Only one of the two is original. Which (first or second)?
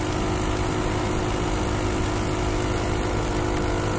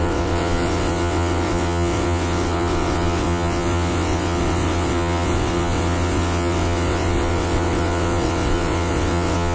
first